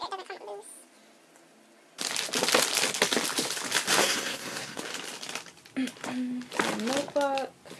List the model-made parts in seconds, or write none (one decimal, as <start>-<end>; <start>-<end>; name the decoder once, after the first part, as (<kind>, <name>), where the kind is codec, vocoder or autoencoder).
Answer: 4.0-4.8 (codec, SNAC)